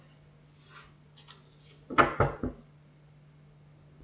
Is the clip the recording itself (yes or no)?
yes